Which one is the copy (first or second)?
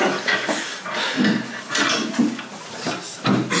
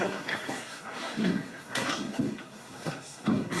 second